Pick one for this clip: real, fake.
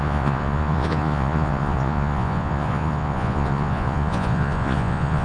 fake